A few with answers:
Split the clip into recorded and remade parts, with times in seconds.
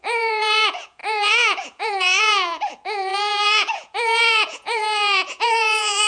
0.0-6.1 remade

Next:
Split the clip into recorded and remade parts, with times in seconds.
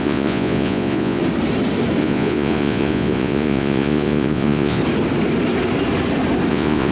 0.0-1.2 remade; 1.2-2.0 recorded; 2.0-4.8 remade; 4.8-6.5 recorded; 6.5-6.9 remade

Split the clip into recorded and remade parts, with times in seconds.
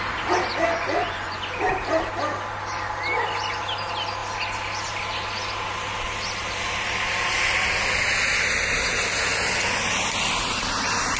0.0-0.6 recorded; 0.6-1.6 remade; 1.6-11.2 recorded